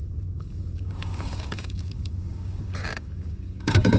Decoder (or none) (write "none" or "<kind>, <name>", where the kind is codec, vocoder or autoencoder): codec, DAC